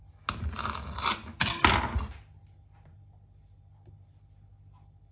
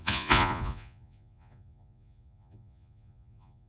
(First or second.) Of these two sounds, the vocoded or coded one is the second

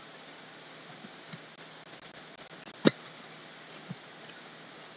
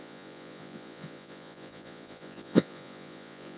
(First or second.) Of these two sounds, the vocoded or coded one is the second